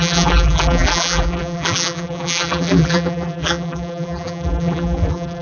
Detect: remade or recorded remade